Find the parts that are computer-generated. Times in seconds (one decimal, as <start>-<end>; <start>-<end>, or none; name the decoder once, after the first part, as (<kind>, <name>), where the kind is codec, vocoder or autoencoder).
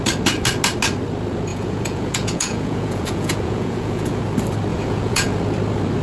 1.5-4.2 (vocoder, Vocos); 4.7-5.4